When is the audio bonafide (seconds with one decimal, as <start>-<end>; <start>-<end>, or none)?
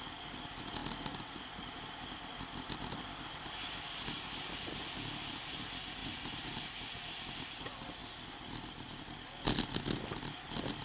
0.0-6.0; 7.4-10.8